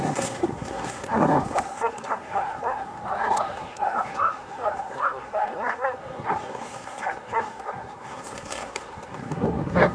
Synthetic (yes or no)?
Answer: yes